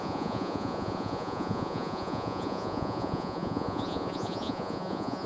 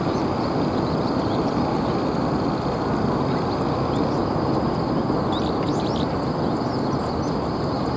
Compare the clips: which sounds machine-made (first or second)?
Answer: first